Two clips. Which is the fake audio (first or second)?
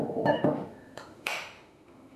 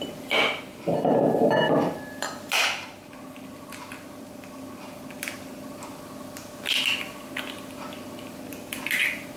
first